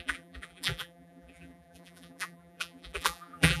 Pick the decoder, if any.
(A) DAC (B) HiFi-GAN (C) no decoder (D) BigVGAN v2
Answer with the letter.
D